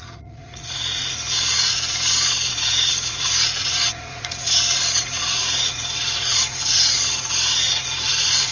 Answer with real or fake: fake